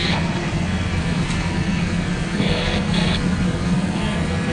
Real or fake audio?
fake